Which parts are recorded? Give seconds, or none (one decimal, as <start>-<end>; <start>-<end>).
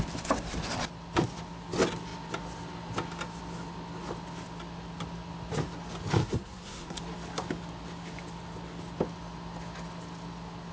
0.0-6.2; 7.0-10.7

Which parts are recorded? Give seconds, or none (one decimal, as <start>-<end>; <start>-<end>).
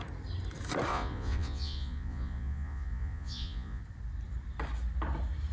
0.0-0.9; 3.8-5.5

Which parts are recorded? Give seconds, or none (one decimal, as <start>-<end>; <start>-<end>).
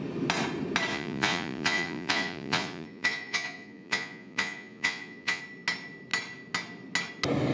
0.0-0.9; 5.4-7.5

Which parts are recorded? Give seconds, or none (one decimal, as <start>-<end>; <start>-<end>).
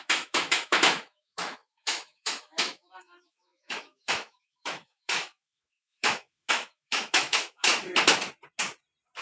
7.7-9.2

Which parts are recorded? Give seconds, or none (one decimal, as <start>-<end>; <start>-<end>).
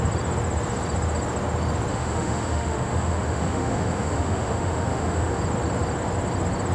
0.0-1.9; 5.4-6.7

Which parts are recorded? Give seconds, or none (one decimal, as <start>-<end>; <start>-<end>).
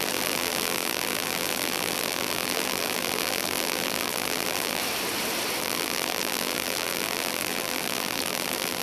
4.8-5.6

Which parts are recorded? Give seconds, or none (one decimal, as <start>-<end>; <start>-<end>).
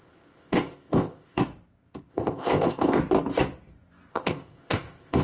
1.4-2.1; 3.0-4.1